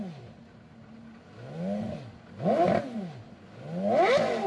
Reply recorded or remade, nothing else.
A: recorded